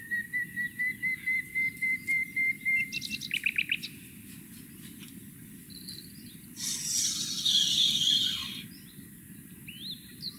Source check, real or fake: real